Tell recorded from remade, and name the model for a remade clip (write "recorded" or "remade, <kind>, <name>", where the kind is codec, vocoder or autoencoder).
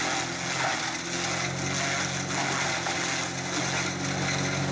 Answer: recorded